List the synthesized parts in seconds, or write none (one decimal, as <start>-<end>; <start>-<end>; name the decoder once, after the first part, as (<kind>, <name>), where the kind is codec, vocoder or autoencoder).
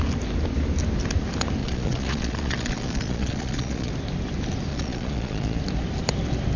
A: 1.6-3.9 (vocoder, Vocos); 4.7-5.6